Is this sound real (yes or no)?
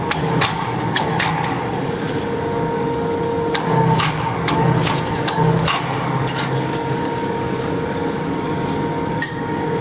no